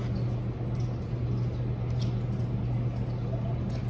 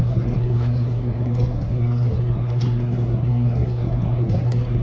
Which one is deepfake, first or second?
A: second